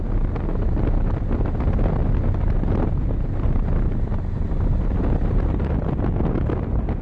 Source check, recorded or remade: recorded